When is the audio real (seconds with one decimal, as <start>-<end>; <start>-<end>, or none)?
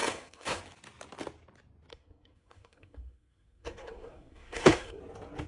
0.6-1.9; 5.0-5.5